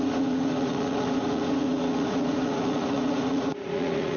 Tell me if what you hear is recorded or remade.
remade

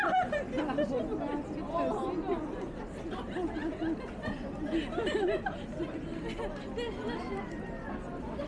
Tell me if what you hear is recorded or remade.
recorded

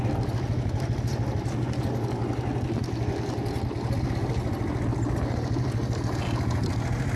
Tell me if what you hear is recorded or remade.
recorded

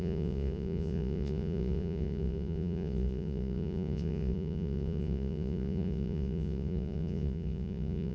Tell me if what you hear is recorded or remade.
remade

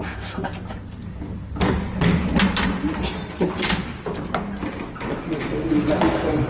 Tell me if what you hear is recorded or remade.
recorded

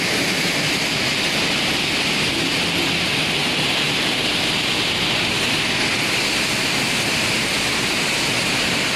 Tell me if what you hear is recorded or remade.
recorded